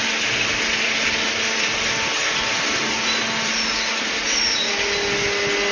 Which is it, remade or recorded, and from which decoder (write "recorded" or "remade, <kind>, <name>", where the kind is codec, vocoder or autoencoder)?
recorded